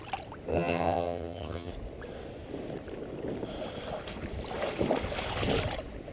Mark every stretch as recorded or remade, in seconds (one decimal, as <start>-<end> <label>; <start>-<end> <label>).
0.0-0.5 recorded; 0.5-1.7 remade; 1.7-6.1 recorded